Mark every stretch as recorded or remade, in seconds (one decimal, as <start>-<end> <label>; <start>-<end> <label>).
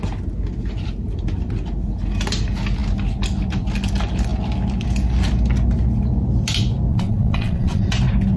0.0-6.9 recorded; 6.9-7.8 remade; 7.8-8.4 recorded